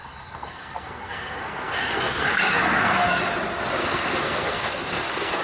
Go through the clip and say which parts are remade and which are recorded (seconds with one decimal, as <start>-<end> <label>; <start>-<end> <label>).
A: 0.0-3.2 remade; 3.2-3.8 recorded; 3.8-5.4 remade